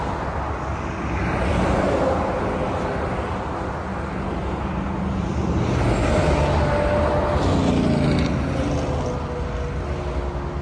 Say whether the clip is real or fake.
real